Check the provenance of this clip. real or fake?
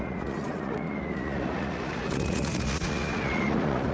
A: fake